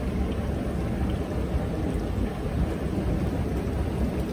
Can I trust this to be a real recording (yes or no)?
yes